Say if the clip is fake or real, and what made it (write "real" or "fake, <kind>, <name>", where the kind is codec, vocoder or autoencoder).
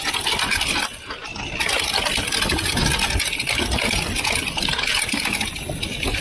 real